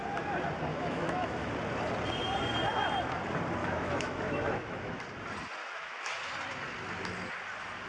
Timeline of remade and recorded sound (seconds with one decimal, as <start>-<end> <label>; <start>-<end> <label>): 0.0-0.7 recorded; 0.7-1.5 remade; 1.5-3.6 recorded; 3.6-5.0 remade; 5.0-5.6 recorded; 5.6-6.3 remade; 6.3-7.9 recorded